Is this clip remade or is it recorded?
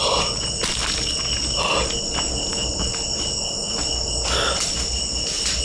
recorded